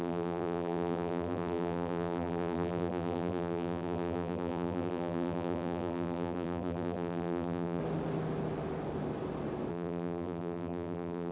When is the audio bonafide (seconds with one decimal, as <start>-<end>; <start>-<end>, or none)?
7.8-9.7

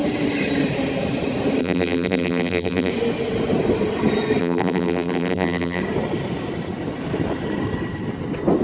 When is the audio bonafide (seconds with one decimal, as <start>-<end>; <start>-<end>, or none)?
0.0-1.6; 2.9-4.4; 5.8-8.6

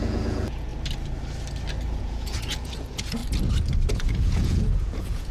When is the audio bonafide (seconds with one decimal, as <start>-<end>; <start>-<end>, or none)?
0.7-2.0; 3.2-3.9

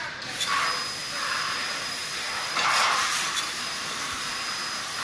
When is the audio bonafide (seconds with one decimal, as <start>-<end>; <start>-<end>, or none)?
0.0-1.2; 4.2-5.0